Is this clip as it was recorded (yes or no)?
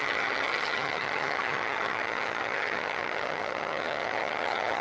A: no